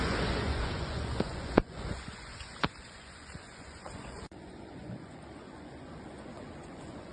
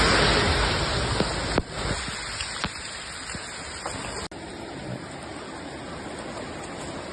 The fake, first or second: first